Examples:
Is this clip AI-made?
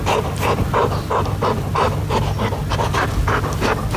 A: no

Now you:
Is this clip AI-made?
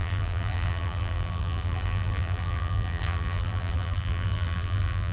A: yes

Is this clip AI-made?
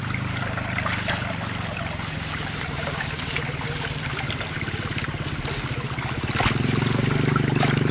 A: no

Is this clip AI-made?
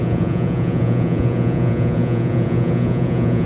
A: yes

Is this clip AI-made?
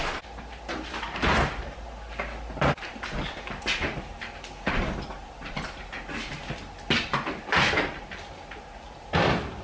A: no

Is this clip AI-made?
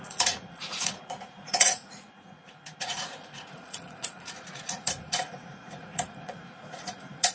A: yes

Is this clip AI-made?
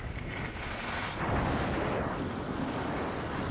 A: no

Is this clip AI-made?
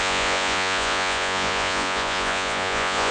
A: yes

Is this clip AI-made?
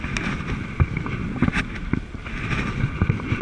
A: no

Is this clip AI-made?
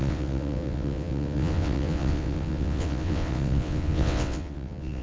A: yes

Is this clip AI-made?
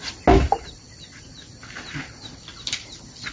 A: no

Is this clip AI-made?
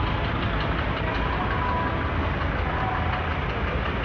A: no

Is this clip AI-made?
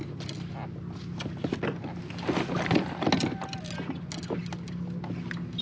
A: no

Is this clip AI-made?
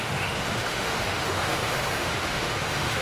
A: yes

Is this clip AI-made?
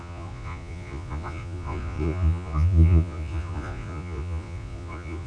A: yes